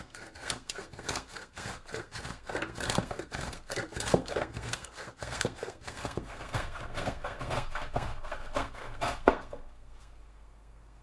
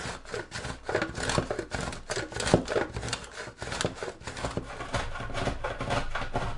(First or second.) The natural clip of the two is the second